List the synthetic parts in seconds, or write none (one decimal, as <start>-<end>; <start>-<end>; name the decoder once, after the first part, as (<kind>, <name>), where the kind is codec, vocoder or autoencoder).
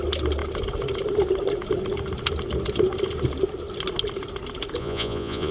4.8-5.5 (vocoder, Vocos)